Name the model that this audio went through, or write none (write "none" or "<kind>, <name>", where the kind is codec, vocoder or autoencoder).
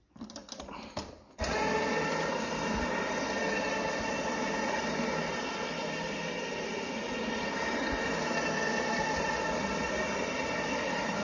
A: none